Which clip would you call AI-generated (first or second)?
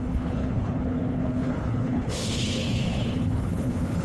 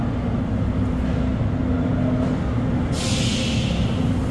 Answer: first